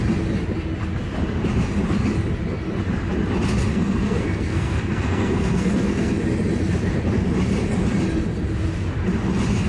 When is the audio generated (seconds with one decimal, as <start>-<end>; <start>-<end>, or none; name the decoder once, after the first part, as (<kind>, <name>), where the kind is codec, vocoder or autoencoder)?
3.7-6.1 (codec, SNAC)